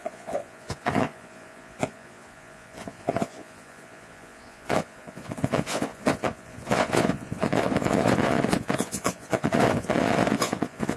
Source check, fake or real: fake